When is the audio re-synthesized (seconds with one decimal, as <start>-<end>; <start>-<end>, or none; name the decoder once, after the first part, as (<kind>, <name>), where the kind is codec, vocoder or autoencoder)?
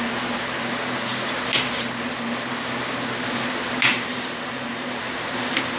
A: 3.9-5.8 (vocoder, BigVGAN v2)